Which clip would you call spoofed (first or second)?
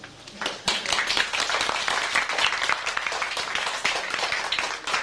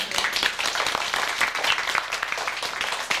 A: first